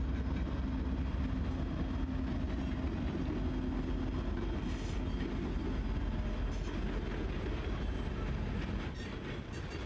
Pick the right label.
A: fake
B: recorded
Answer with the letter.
B